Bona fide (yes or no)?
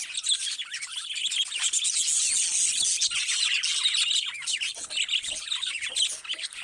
yes